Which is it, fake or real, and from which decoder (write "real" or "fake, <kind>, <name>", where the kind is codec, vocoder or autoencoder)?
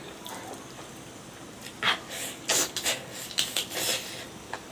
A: real